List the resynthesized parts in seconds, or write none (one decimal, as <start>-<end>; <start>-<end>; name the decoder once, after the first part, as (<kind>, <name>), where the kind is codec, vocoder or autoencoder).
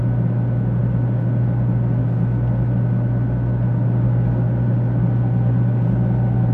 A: none